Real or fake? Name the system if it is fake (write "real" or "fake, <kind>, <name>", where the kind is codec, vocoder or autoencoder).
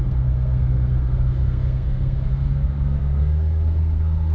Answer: fake, codec, SNAC